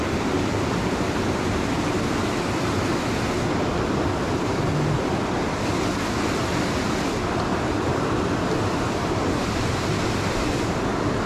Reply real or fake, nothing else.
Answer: real